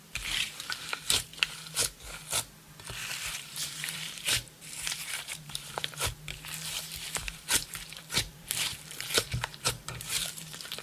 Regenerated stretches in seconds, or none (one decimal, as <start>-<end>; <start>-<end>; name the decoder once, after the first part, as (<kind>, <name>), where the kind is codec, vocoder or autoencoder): 0.0-1.3 (vocoder, BigVGAN v2); 3.3-10.8